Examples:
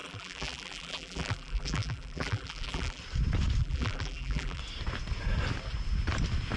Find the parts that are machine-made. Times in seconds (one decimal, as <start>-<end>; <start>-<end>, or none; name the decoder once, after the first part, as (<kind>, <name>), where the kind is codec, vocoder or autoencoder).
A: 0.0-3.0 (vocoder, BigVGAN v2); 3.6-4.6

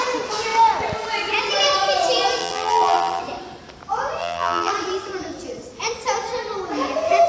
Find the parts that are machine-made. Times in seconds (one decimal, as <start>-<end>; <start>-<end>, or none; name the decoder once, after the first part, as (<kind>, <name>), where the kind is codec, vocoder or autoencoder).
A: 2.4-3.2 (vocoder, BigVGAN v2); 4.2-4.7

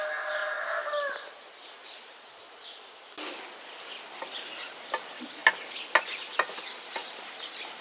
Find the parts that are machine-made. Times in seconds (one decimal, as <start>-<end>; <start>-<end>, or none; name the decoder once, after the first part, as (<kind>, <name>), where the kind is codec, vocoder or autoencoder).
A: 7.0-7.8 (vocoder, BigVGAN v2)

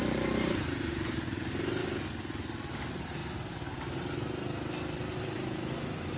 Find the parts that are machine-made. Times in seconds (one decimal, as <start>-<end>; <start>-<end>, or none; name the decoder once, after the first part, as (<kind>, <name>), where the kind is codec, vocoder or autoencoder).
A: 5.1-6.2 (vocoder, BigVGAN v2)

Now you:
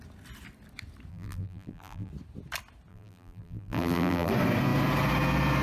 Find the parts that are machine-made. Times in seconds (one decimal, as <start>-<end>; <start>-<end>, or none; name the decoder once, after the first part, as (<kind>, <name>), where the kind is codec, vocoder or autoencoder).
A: 1.1-2.1 (vocoder, BigVGAN v2); 2.9-4.3

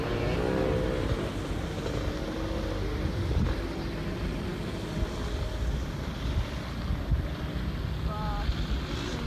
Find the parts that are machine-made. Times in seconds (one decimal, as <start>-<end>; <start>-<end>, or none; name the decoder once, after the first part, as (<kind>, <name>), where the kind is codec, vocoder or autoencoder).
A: none

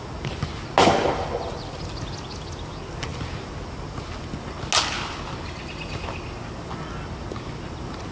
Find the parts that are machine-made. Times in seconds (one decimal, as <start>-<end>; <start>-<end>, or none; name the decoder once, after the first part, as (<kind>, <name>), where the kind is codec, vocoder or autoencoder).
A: none

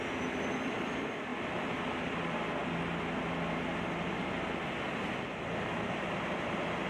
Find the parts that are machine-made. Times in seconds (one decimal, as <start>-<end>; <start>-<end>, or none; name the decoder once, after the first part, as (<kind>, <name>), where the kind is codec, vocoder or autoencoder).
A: none